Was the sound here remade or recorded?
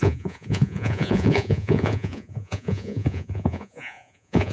remade